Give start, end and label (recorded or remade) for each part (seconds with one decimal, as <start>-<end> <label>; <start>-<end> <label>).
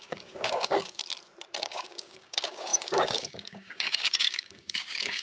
0.0-1.0 remade; 1.0-1.6 recorded; 1.6-5.2 remade